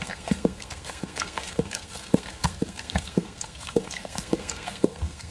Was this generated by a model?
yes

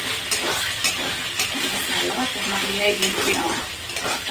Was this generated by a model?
no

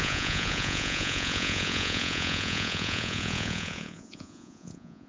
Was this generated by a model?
yes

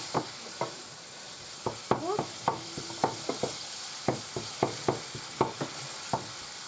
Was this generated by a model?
no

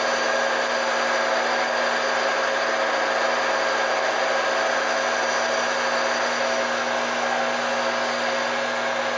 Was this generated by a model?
no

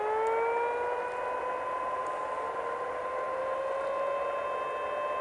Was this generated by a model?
no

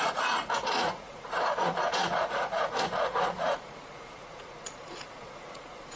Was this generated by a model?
yes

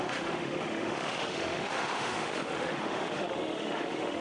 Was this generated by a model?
yes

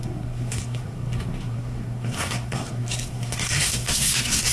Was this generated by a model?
yes